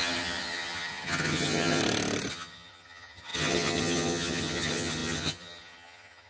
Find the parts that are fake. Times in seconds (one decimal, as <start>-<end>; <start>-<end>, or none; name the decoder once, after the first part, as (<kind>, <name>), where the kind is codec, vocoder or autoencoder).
0.0-1.8 (vocoder, HiFi-GAN); 2.3-6.3